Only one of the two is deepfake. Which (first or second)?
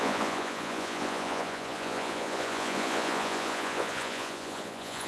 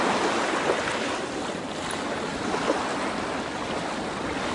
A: first